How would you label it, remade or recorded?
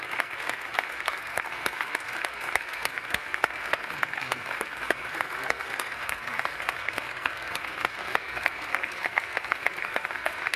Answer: remade